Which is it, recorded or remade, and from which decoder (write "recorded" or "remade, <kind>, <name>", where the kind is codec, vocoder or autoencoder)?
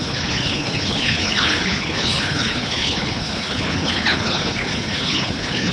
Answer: remade, codec, HILCodec